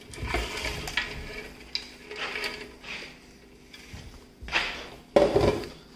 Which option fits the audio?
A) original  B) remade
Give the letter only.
A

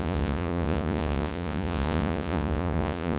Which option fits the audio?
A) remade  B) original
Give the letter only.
A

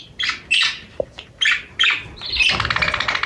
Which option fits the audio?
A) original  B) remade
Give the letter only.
A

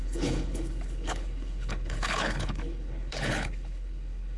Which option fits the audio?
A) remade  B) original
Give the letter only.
A